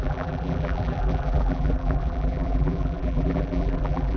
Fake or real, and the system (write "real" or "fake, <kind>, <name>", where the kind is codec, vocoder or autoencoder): fake, vocoder, BigVGAN v2